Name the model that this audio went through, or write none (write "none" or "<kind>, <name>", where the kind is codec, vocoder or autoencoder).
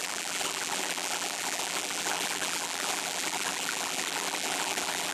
vocoder, BigVGAN v2